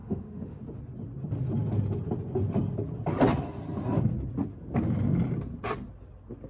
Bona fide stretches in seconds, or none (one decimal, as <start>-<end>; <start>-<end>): 0.6-6.5